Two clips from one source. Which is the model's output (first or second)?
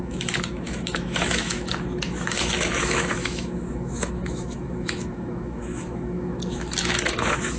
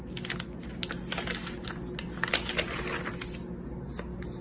first